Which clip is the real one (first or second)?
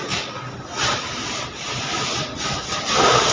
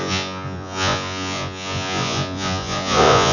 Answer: first